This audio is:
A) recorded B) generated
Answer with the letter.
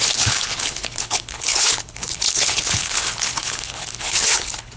B